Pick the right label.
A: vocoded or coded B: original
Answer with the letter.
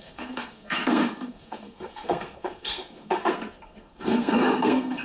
A